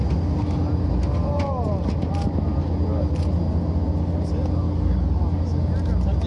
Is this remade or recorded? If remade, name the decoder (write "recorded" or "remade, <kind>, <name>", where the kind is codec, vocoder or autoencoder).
recorded